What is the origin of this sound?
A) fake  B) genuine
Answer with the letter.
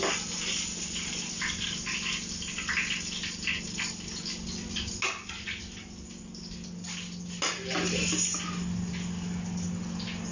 B